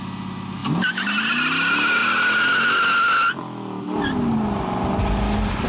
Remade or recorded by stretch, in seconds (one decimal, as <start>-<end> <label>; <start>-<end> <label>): 0.0-5.7 recorded